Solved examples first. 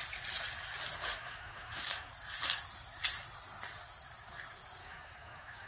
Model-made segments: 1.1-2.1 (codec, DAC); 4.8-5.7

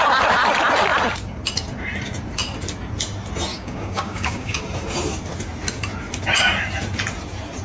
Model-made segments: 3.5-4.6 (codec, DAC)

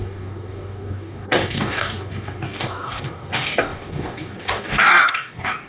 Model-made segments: 0.0-5.7 (codec, DAC)

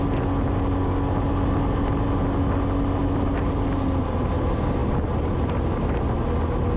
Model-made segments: none

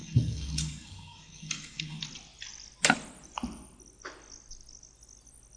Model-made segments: 0.0-2.0 (codec, DAC)

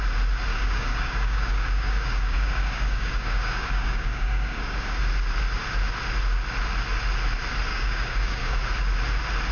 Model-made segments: 0.5-5.0 (codec, DAC); 7.7-8.6